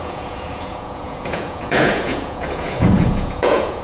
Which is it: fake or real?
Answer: fake